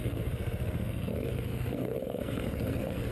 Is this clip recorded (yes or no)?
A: no